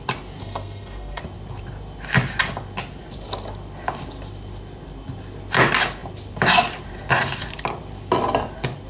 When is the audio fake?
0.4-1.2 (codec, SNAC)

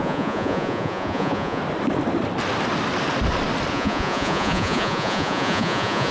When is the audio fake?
0.0-1.6 (vocoder, Vocos); 3.7-6.1

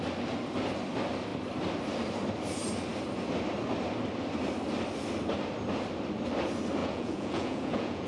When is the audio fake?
6.8-8.1 (vocoder, Vocos)

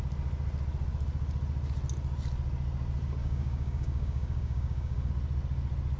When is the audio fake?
3.2-5.1 (codec, DAC)